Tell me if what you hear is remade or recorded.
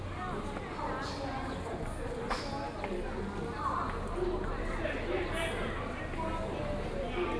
recorded